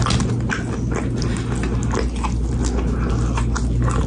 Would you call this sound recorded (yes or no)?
yes